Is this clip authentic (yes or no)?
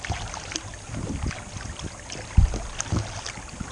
yes